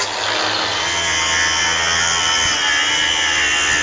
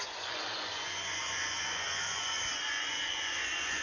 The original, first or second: first